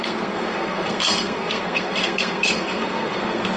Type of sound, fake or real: fake